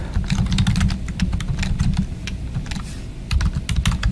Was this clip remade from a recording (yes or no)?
no